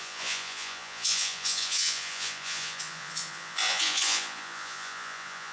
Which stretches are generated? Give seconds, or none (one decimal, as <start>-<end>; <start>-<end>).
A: 0.0-5.5